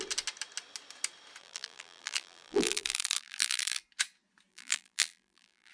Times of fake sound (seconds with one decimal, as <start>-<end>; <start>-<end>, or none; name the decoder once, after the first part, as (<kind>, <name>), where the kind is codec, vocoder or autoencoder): 1.4-3.8 (vocoder, BigVGAN v2); 4.5-5.7